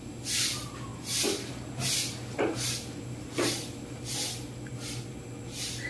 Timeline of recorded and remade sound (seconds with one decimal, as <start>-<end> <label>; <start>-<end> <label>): 0.0-0.9 remade; 0.9-1.5 recorded; 1.5-5.9 remade